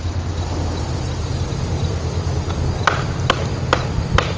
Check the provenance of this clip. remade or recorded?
recorded